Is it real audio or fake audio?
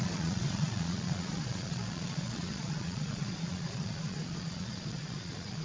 fake